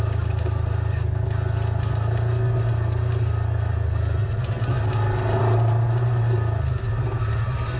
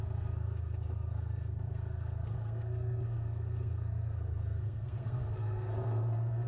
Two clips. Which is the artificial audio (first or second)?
second